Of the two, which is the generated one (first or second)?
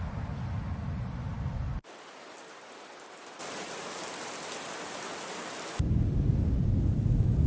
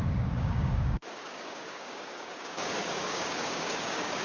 second